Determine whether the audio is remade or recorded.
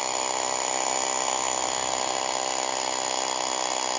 recorded